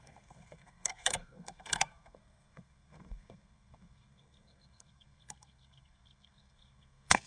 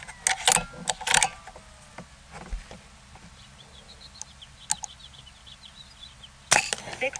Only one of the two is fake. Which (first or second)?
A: first